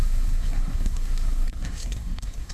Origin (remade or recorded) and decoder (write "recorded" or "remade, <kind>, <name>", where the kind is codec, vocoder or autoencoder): remade, codec, SNAC